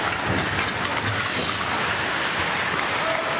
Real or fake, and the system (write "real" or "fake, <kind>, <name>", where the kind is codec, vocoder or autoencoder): real